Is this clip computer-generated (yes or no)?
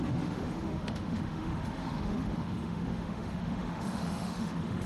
yes